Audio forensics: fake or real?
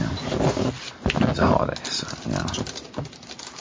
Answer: real